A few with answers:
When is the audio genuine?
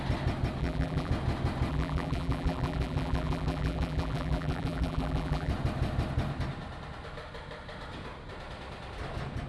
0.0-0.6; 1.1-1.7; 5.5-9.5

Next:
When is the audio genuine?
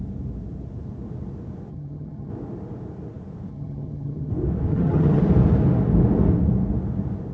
0.0-1.7; 2.3-3.5; 4.3-4.7; 5.2-7.3